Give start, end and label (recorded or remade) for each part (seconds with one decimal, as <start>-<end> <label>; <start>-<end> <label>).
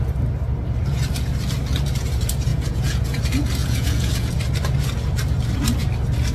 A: 0.0-2.5 recorded; 2.5-3.2 remade; 3.2-3.6 recorded; 3.6-4.3 remade; 4.3-6.3 recorded